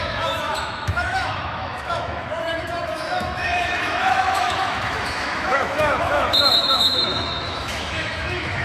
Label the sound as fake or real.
fake